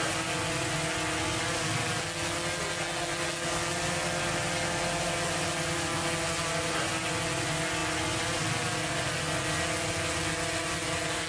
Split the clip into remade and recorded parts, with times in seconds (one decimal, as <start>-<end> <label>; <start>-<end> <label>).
0.0-11.3 recorded